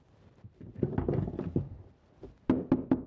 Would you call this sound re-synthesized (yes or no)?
yes